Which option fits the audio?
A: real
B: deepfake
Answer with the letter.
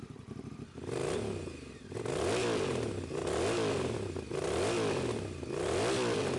A